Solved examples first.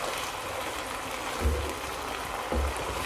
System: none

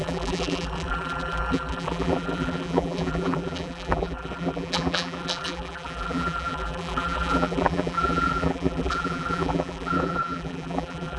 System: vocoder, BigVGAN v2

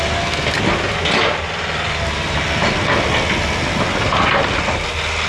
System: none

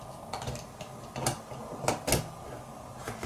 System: none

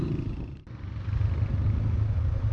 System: none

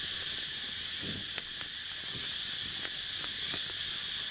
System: none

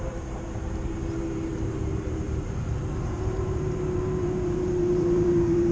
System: vocoder, BigVGAN v2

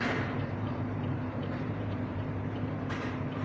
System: vocoder, BigVGAN v2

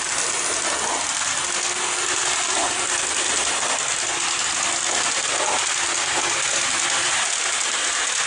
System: none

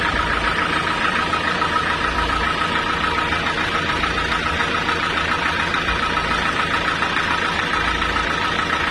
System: vocoder, BigVGAN v2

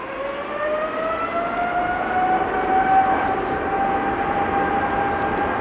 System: none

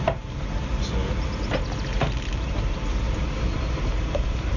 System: none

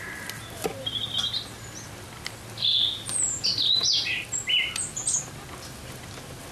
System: none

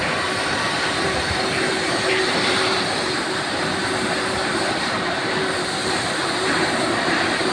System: vocoder, BigVGAN v2